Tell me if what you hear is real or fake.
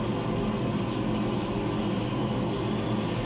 real